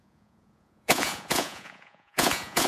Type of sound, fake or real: fake